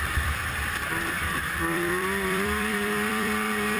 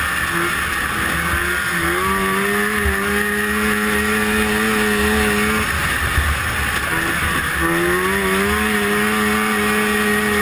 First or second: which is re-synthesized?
first